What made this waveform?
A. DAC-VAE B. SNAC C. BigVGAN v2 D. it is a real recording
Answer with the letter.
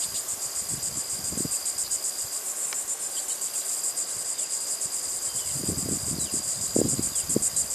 D